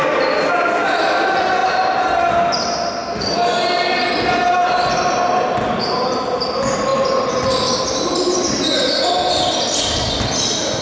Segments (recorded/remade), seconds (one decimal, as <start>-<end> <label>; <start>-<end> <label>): 0.0-10.8 recorded